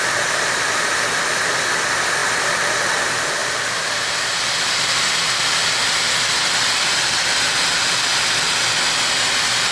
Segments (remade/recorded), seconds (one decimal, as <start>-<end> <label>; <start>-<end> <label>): 0.0-9.7 recorded